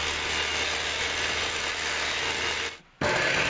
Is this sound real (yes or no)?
yes